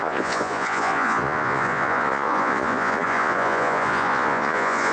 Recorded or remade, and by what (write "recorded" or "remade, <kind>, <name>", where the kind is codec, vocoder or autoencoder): remade, vocoder, Vocos